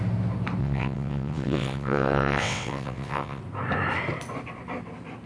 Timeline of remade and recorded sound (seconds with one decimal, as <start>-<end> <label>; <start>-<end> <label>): 0.0-0.6 recorded; 0.6-3.4 remade; 3.4-5.3 recorded